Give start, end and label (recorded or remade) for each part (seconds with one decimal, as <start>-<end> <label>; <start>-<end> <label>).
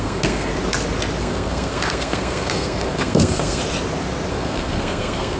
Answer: 0.0-0.5 remade; 0.5-1.2 recorded; 1.2-3.6 remade; 3.6-4.3 recorded; 4.3-5.4 remade